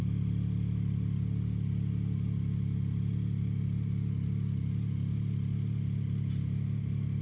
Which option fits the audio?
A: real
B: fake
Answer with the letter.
A